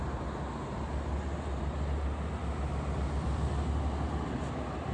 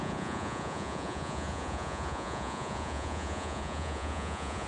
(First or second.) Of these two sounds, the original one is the first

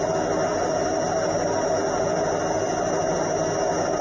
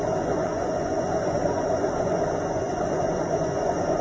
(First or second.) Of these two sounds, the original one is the first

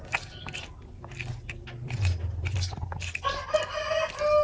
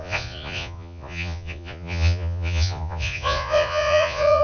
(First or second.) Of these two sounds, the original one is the first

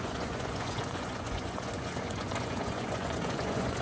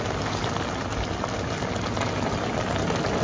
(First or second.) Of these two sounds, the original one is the second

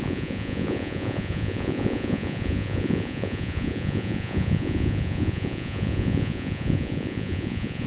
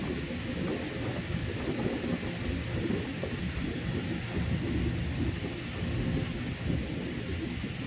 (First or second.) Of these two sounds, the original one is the second